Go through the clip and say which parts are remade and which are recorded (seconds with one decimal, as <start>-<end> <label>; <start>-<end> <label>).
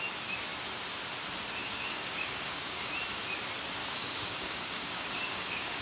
0.0-1.6 recorded; 1.6-2.9 remade; 2.9-3.8 recorded; 3.8-5.8 remade